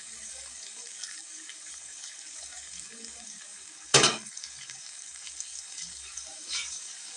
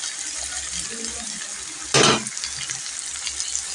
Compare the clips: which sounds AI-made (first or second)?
first